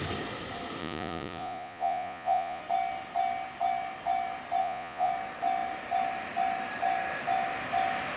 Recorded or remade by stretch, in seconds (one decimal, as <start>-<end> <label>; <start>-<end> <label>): 0.0-0.8 recorded; 0.8-2.6 remade; 2.6-4.6 recorded; 4.6-5.1 remade; 5.1-8.2 recorded